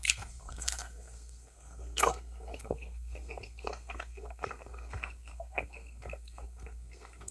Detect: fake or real fake